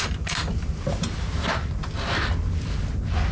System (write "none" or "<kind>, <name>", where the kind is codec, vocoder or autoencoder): none